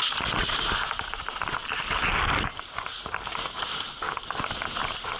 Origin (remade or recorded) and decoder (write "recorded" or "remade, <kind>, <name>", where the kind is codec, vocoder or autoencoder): recorded